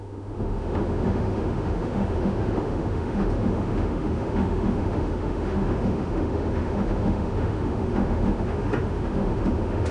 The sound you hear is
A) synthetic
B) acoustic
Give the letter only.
A